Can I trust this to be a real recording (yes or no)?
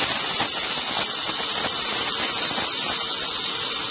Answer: yes